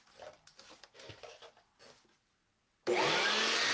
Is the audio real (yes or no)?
yes